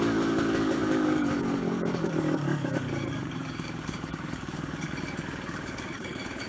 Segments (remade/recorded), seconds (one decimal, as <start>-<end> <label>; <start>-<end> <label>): 0.0-6.5 remade